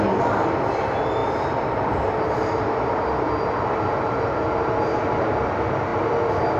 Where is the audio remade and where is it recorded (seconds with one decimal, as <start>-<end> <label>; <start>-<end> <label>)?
0.0-6.6 recorded